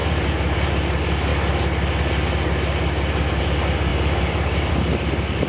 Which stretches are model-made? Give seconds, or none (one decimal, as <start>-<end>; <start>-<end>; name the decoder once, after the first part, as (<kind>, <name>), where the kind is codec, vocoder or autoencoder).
0.0-0.7 (vocoder, BigVGAN v2); 3.9-4.7